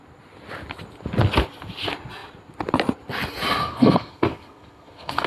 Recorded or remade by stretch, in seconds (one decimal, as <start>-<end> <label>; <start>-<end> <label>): 0.0-3.6 recorded; 3.6-5.3 remade